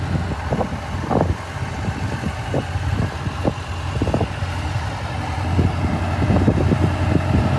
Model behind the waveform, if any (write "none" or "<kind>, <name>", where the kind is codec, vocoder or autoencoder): none